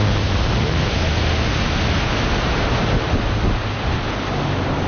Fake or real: real